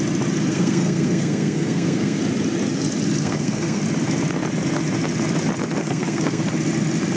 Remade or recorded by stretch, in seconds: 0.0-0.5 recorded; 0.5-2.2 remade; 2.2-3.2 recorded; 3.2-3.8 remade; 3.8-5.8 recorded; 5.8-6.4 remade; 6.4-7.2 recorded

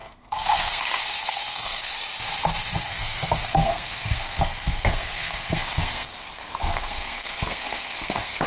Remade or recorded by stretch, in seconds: 0.0-1.9 remade; 1.9-2.8 recorded; 2.8-8.5 remade

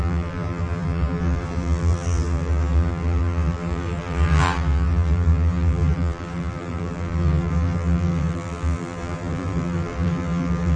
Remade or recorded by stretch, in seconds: 0.0-10.8 remade

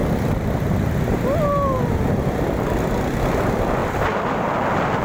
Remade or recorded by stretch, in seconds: 0.0-5.0 recorded

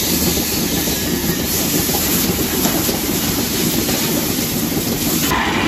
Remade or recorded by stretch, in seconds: 0.0-1.2 recorded; 1.2-4.4 remade; 4.4-5.7 recorded

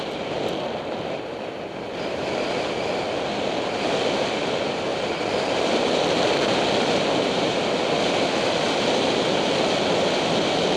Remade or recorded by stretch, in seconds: 0.0-10.8 recorded

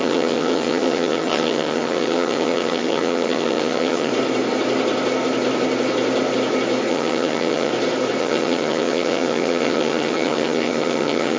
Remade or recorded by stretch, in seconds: 0.0-4.1 remade; 4.1-6.9 recorded; 6.9-7.7 remade; 7.7-8.2 recorded; 8.2-11.4 remade